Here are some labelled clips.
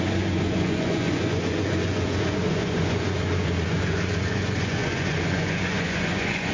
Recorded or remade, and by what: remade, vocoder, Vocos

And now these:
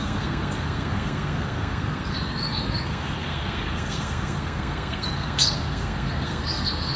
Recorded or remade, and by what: remade, codec, SNAC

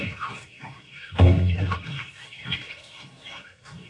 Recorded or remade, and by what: remade, codec, SNAC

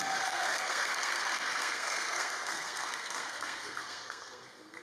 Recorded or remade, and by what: remade, codec, SNAC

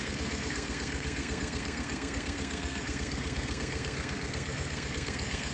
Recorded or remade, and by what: remade, codec, SNAC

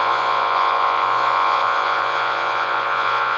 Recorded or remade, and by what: remade, vocoder, Vocos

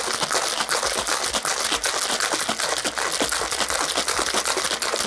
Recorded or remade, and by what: recorded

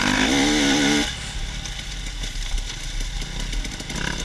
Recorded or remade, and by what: recorded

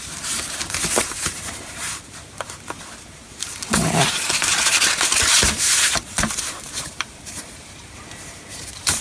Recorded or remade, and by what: remade, vocoder, BigVGAN v2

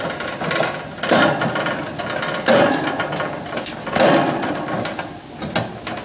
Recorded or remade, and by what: recorded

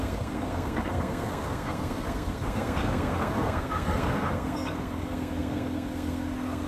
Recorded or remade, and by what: remade, codec, SNAC